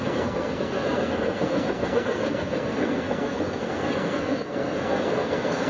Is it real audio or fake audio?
fake